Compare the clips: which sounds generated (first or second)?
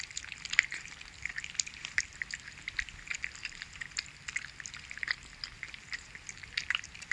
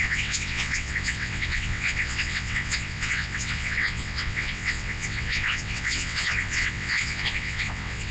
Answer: second